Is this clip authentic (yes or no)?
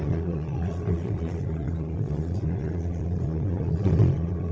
no